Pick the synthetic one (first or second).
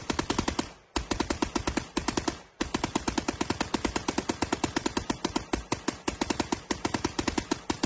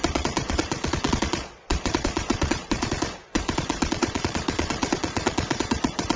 second